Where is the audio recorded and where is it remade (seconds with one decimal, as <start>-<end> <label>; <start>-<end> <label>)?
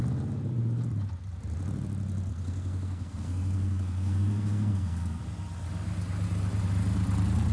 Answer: 0.0-2.3 recorded; 2.3-5.2 remade; 5.2-7.5 recorded